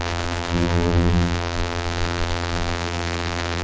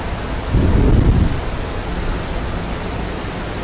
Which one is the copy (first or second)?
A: first